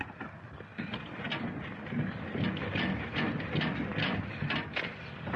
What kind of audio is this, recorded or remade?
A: recorded